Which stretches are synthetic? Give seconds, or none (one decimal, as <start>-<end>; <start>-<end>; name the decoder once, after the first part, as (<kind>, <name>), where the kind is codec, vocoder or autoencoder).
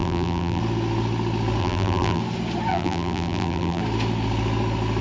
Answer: 0.0-0.6 (vocoder, BigVGAN v2); 1.6-2.2; 2.7-3.8